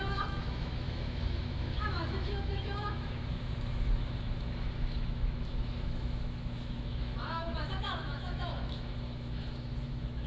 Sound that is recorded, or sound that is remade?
remade